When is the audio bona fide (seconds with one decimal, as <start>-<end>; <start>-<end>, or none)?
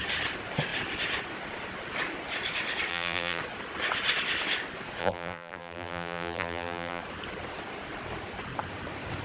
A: 0.0-2.9; 3.4-5.0; 7.0-9.2